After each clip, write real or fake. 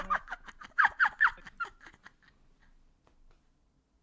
real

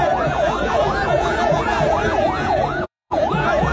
fake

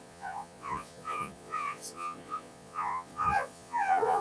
fake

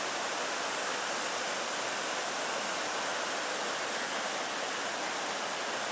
real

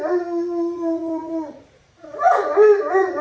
fake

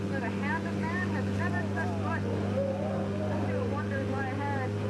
real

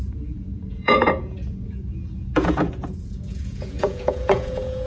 fake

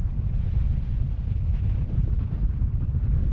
real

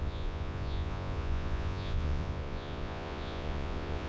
fake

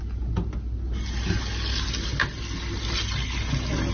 real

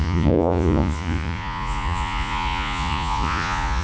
fake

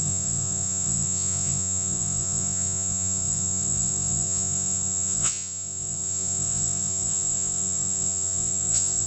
fake